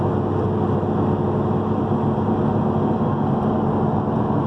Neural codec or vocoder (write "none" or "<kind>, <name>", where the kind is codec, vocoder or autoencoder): none